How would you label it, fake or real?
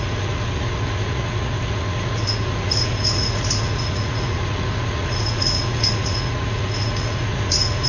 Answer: fake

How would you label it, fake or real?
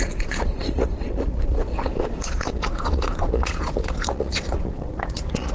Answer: fake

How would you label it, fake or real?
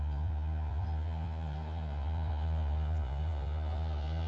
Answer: fake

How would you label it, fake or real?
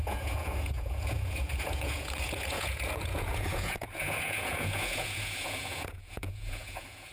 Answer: fake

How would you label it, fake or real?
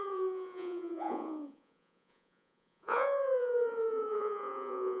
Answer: fake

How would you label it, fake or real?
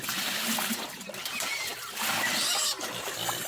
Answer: real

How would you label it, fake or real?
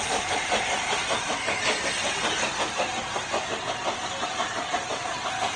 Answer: real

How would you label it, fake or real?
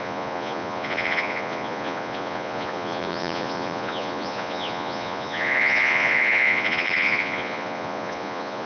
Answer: fake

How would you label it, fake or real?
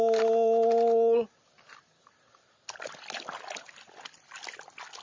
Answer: real